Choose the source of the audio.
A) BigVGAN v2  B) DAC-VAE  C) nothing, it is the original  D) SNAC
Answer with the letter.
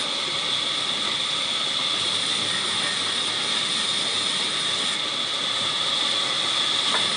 C